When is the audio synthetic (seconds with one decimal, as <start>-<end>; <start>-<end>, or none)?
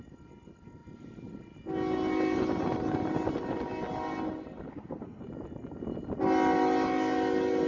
4.7-5.2